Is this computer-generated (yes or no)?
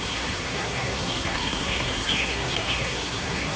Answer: yes